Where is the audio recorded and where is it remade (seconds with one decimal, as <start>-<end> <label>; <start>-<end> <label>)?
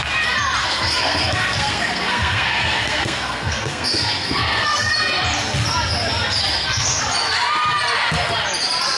0.0-0.6 recorded; 0.6-4.9 remade; 4.9-6.5 recorded; 6.5-7.0 remade; 7.0-9.0 recorded